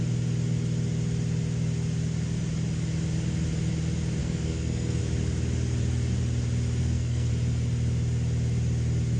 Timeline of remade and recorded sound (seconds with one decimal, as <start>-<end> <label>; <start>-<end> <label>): 0.0-4.2 recorded; 4.2-5.0 remade; 5.0-6.8 recorded; 6.8-7.3 remade; 7.3-9.2 recorded